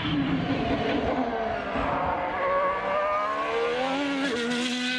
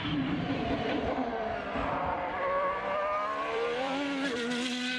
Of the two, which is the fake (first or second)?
second